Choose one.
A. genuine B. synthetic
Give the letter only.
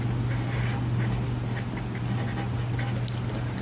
A